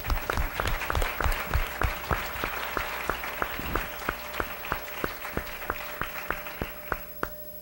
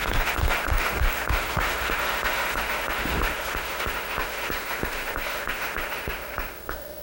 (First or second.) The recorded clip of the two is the first